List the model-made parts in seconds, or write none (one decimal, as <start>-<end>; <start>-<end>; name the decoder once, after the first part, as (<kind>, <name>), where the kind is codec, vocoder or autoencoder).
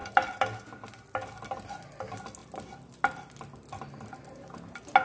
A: none